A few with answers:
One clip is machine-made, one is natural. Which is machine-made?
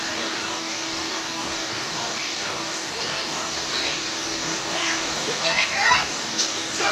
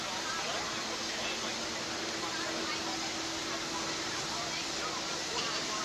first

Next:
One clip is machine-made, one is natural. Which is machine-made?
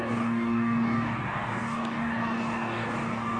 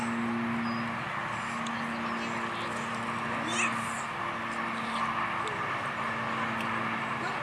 first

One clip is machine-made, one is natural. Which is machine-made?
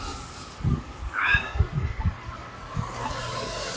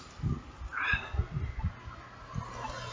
first